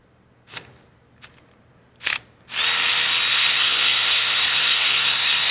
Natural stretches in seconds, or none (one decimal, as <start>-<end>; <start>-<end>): 0.0-3.3